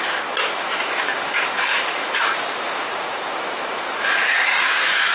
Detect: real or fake fake